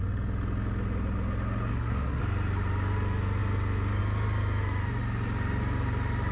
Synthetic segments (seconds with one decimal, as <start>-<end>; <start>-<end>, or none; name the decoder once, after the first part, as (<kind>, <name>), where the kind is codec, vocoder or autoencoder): 1.7-2.2 (codec, SNAC)